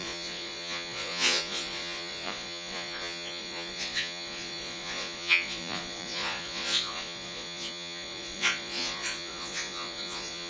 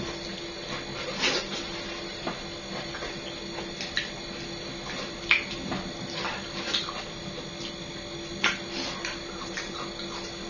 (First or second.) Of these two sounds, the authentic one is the second